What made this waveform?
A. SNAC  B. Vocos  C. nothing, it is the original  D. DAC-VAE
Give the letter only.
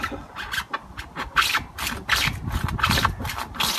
C